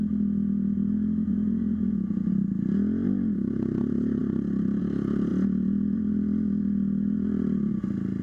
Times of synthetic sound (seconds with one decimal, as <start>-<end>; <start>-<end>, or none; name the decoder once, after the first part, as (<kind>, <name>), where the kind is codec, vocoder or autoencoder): 1.3-2.3 (vocoder, Vocos)